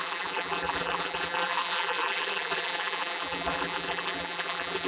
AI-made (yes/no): yes